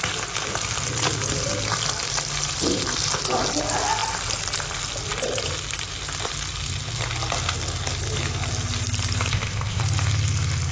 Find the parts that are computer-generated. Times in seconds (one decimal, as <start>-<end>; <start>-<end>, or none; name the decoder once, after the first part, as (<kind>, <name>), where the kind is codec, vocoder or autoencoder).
9.3-9.8 (codec, ZipCodec)